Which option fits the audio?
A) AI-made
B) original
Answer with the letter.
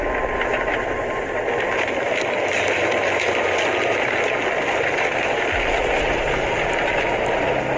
B